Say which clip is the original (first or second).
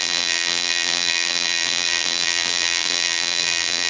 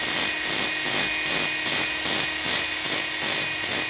second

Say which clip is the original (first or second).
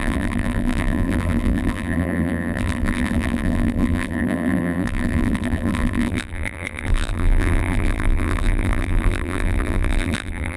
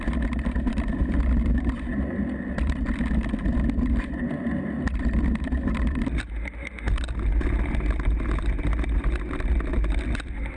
second